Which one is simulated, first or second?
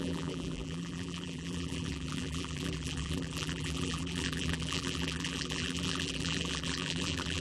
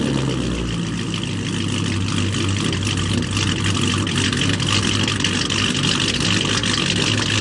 first